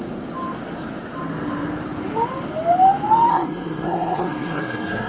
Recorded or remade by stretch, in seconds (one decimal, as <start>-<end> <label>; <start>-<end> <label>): 0.0-3.3 recorded; 3.3-5.1 remade